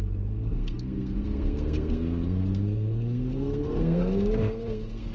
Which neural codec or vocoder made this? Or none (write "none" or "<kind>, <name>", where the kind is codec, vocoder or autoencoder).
codec, SNAC